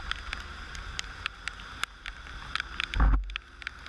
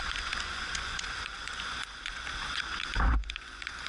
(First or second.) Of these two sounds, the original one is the first